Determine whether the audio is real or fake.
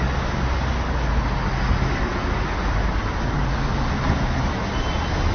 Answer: real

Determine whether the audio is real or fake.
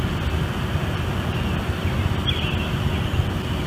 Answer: real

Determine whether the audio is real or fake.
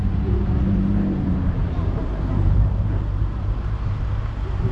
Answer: fake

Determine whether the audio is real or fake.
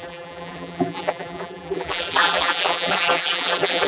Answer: fake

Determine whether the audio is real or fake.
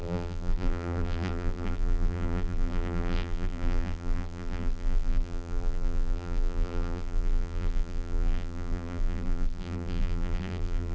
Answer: fake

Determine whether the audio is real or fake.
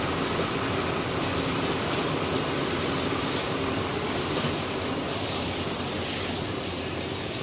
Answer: real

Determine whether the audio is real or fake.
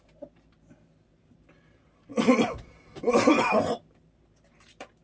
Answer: fake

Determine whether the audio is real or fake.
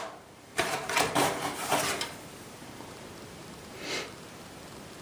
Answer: fake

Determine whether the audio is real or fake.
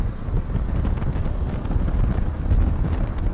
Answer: real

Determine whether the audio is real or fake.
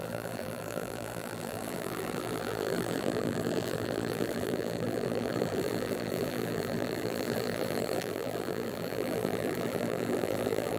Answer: fake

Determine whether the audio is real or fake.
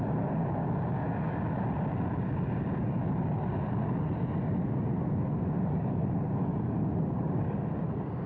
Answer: real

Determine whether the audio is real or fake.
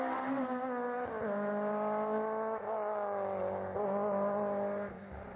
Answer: real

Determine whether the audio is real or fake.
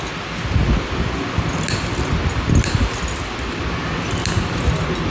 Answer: real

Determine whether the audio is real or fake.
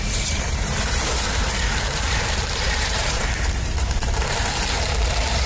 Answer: fake